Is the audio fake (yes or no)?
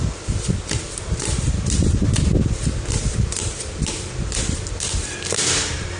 yes